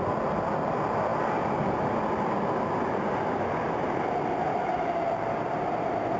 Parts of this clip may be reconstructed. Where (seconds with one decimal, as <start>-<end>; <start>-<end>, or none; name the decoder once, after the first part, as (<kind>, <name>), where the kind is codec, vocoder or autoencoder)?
none